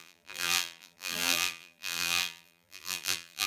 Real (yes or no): no